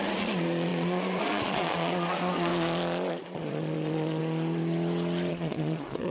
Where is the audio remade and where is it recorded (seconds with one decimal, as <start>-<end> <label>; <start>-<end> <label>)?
0.0-2.5 remade; 2.5-3.1 recorded; 3.1-4.2 remade; 4.2-5.3 recorded; 5.3-6.1 remade